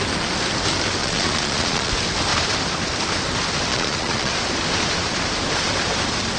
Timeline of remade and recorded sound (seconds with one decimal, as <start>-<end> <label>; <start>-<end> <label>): 0.0-1.0 recorded; 1.0-1.9 remade; 1.9-3.7 recorded; 3.7-4.3 remade; 4.3-6.4 recorded